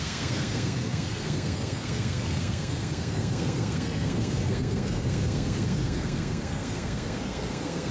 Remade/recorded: remade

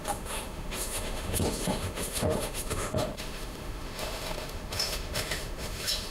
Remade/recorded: remade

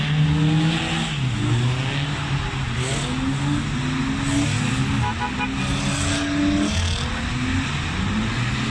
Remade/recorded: recorded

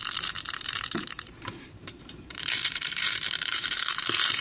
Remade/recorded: remade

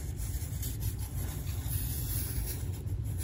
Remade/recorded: recorded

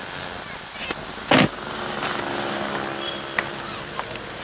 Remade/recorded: recorded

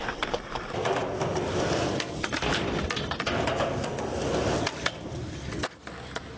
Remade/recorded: recorded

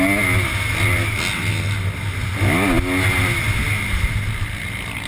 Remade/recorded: recorded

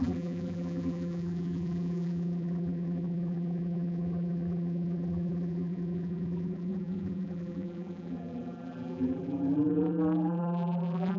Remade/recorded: remade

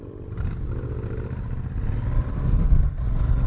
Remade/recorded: recorded